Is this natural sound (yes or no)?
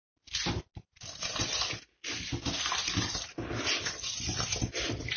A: yes